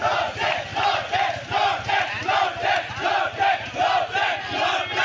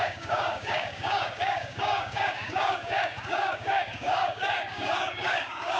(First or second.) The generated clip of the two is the second